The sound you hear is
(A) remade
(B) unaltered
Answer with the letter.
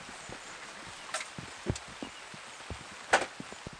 B